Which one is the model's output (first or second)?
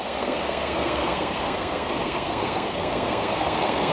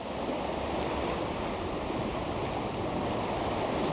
first